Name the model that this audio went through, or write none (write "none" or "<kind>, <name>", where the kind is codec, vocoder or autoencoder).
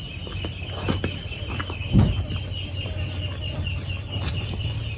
none